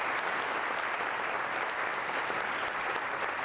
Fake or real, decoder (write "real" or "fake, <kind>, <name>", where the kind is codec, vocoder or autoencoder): real